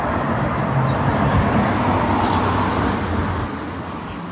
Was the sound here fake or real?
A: real